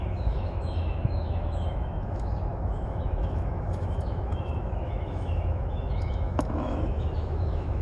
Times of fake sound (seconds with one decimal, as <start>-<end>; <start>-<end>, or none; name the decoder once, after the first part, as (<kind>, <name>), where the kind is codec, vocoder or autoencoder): 0.0-7.8 (autoencoder, DAC-VAE)